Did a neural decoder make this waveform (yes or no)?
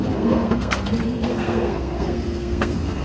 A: yes